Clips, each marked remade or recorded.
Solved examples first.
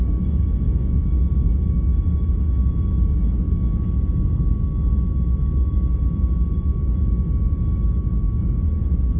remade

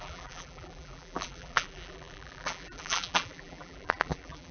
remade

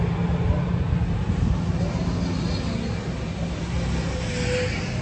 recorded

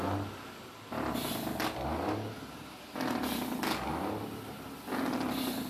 recorded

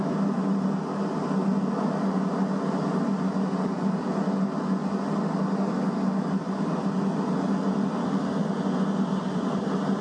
recorded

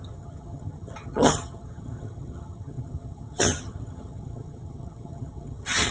remade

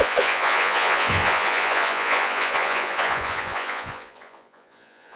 remade